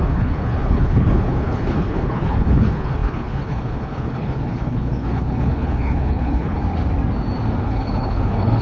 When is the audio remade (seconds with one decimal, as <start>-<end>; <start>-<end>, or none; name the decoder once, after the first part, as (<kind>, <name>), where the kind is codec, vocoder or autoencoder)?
0.0-6.6 (codec, HILCodec); 7.6-8.6